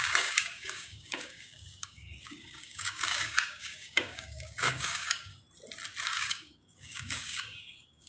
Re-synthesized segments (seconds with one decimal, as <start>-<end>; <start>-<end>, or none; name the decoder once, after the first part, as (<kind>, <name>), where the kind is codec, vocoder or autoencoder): 0.0-5.3 (codec, DAC); 6.0-8.1